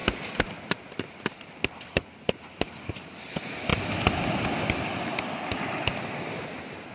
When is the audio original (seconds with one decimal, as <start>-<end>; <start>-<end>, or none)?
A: 3.1-3.7; 4.3-5.1